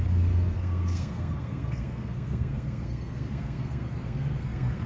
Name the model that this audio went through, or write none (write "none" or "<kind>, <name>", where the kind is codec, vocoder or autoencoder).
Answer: codec, SNAC